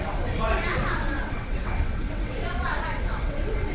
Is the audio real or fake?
fake